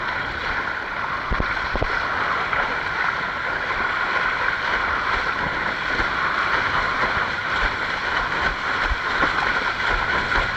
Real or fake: real